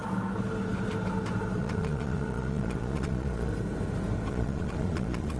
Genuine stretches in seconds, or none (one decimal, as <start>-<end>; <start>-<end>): 0.0-1.6; 3.5-4.3

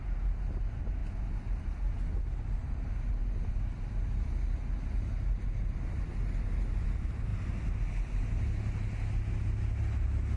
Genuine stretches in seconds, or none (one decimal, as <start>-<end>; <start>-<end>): 0.0-10.4

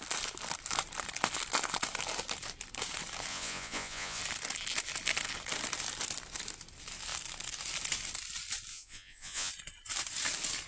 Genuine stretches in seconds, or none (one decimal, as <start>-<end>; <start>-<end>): 0.0-3.3; 4.2-8.7; 9.5-10.7

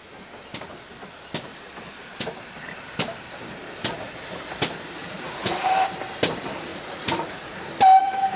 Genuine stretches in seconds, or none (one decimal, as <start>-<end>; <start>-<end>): 0.0-5.0; 5.7-6.7; 7.7-8.4

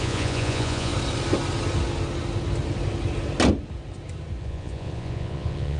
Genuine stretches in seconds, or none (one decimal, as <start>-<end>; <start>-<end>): 0.9-4.4

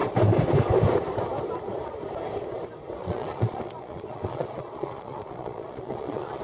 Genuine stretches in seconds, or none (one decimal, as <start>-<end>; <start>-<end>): 0.0-3.0